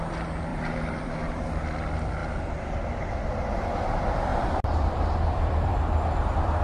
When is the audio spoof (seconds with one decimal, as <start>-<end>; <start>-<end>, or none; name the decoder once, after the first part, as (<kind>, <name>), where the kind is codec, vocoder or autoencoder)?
0.5-1.4 (vocoder, BigVGAN v2); 4.3-6.6